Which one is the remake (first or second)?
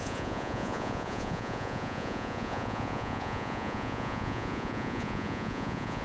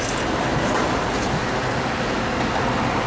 first